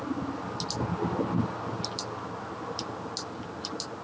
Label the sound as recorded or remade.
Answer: recorded